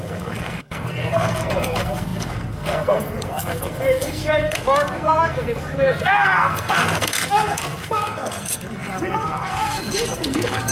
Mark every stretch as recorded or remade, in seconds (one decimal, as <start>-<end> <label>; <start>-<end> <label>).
0.0-10.7 remade